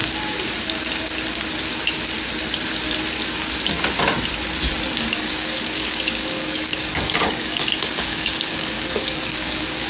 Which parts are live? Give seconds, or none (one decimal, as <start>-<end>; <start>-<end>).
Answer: 0.0-5.1